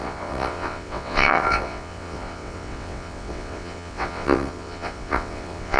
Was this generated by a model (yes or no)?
yes